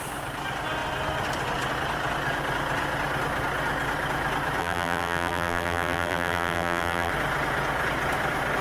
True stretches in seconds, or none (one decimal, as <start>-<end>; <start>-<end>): 0.0-4.6; 7.1-8.6